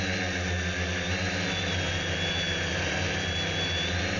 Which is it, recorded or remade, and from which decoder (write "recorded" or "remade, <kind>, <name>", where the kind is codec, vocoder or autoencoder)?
recorded